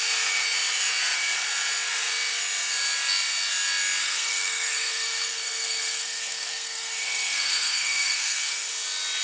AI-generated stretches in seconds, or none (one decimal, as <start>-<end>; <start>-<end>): 4.0-8.7